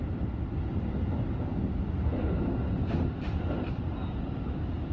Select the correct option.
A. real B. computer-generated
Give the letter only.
A